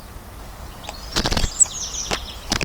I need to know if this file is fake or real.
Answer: real